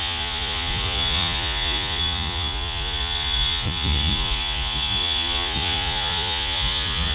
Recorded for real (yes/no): no